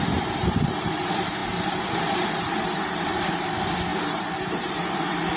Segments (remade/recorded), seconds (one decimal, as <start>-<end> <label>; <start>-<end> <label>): 0.0-5.4 remade